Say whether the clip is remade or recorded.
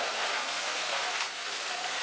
remade